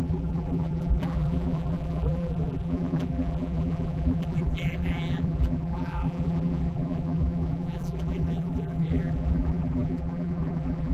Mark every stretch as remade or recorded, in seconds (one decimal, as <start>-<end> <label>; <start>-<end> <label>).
0.0-10.9 remade